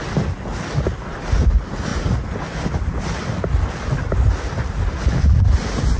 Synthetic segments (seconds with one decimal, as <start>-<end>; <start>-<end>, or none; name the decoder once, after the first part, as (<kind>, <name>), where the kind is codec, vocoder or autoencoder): none